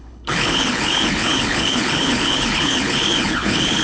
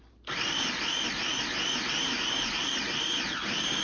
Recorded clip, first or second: second